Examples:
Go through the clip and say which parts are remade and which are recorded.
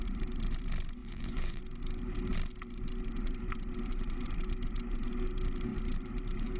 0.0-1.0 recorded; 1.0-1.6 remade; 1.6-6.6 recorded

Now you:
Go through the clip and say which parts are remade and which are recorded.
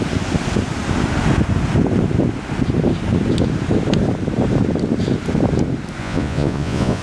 0.0-6.0 recorded; 6.0-7.0 remade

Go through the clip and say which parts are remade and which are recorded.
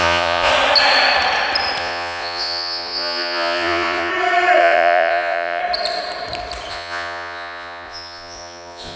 0.0-0.5 remade; 0.5-1.8 recorded; 1.8-4.1 remade; 4.1-4.6 recorded; 4.6-5.6 remade; 5.6-6.7 recorded; 6.7-9.0 remade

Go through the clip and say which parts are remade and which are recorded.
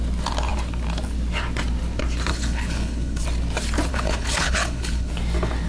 0.0-2.3 recorded; 2.3-3.2 remade; 3.2-3.9 recorded; 3.9-5.1 remade; 5.1-5.7 recorded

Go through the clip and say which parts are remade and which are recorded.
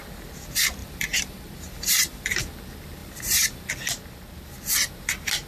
0.0-0.8 recorded; 0.8-2.4 remade; 2.4-3.0 recorded; 3.0-3.7 remade; 3.7-5.5 recorded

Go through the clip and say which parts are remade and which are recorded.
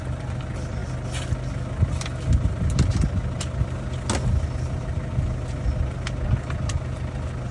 0.0-7.5 recorded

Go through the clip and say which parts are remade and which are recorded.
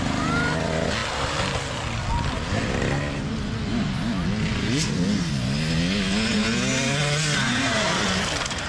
0.0-6.7 recorded; 6.7-8.7 remade